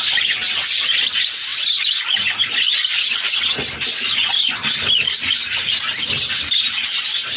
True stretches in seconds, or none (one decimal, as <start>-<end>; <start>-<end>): 0.0-7.4